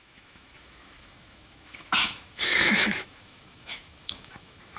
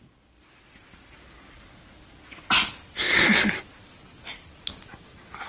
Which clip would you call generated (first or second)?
first